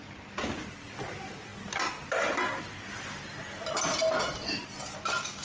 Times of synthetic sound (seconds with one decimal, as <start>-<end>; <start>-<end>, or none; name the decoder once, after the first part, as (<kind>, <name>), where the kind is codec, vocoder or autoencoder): none